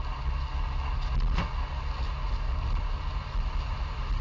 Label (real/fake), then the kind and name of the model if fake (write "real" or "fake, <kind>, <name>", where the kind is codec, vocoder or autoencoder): real